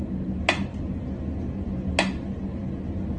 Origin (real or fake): real